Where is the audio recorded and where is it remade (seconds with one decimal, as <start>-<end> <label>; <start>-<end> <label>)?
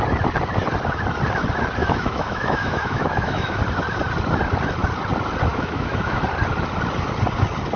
0.0-1.8 recorded; 1.8-3.6 remade; 3.6-5.5 recorded; 5.5-6.2 remade; 6.2-7.8 recorded